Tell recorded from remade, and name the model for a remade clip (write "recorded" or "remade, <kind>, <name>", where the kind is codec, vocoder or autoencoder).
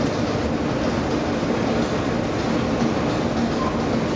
recorded